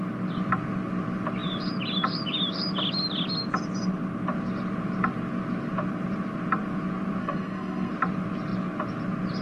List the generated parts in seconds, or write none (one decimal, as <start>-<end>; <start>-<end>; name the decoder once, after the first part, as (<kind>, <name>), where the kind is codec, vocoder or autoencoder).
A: 7.2-7.9 (codec, SNAC)